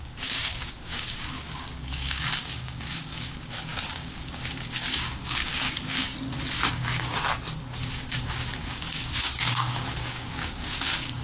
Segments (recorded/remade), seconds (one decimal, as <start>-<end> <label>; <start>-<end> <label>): 0.0-6.1 remade; 6.1-6.7 recorded; 6.7-7.2 remade; 7.2-7.9 recorded; 7.9-11.2 remade